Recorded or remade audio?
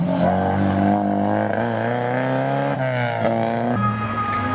recorded